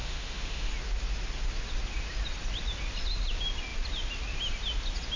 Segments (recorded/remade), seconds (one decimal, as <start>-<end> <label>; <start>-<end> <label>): 0.0-0.7 remade; 0.7-5.2 recorded